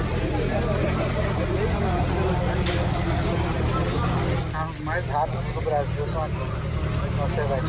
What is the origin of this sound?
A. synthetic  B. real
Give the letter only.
B